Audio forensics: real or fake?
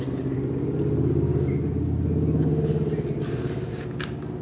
real